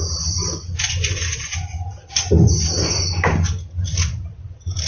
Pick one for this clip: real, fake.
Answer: real